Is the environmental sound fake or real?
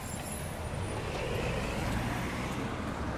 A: real